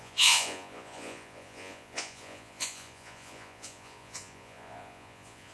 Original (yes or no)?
no